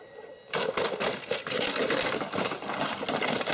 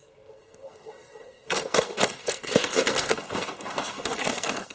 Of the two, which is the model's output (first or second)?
second